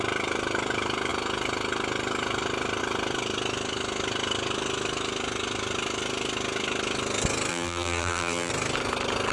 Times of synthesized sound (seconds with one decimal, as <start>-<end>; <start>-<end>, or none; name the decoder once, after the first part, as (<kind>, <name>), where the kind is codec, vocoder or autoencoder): 7.5-8.5 (vocoder, BigVGAN v2)